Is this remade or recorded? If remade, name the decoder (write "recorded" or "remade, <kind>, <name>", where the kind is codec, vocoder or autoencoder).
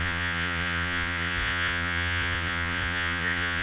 remade, vocoder, Vocos